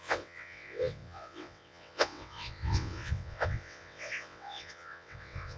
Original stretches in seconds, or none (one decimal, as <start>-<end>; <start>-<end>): none